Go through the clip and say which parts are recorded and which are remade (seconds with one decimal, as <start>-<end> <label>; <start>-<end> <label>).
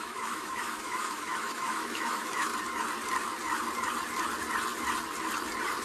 0.0-2.5 remade; 2.5-5.8 recorded